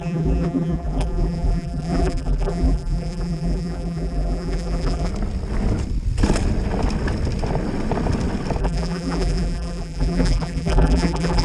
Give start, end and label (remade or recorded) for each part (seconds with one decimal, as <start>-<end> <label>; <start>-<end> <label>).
0.0-5.1 remade; 5.1-8.6 recorded; 8.6-11.4 remade